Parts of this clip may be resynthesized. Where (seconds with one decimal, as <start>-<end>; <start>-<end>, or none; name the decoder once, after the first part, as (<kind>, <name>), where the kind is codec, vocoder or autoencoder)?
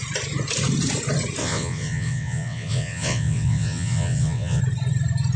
1.4-4.6 (vocoder, WaveNeXt)